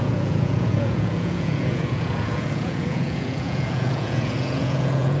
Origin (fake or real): fake